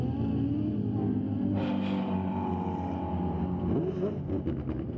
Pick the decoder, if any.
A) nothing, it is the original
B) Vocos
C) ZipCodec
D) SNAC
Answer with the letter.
A